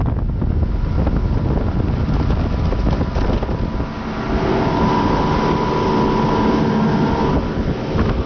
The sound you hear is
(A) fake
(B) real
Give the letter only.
B